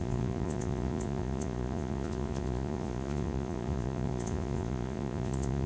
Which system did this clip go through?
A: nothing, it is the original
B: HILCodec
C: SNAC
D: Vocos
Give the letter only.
D